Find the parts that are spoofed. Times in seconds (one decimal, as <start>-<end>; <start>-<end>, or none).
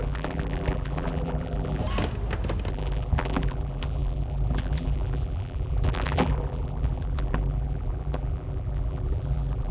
0.0-1.8; 2.7-9.7